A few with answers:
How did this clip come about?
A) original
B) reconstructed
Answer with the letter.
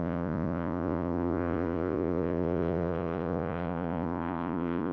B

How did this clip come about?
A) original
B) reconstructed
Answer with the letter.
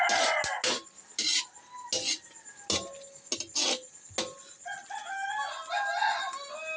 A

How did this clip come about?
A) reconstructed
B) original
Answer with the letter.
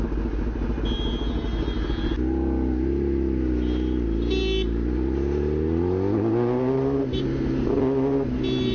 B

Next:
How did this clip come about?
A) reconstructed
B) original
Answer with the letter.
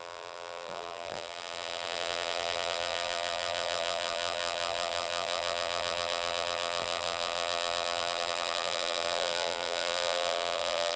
A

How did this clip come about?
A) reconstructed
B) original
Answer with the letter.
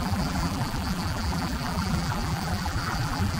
A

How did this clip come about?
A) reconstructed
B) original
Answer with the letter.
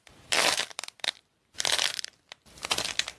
A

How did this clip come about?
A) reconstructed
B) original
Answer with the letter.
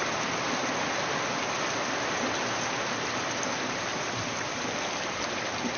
B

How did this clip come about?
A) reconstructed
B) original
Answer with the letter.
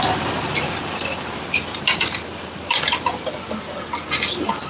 B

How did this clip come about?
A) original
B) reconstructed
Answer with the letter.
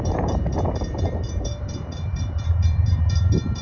B